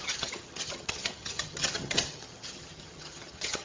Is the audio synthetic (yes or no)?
yes